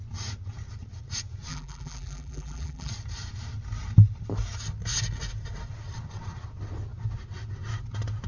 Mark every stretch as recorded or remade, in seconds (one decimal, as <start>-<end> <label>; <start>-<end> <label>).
0.0-1.5 recorded; 1.5-2.9 remade; 2.9-8.3 recorded